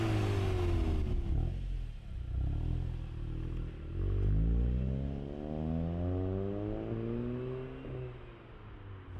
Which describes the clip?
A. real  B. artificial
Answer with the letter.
A